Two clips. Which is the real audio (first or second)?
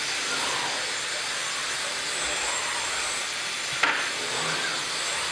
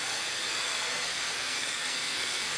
first